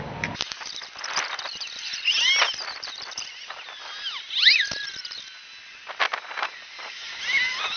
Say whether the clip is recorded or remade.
recorded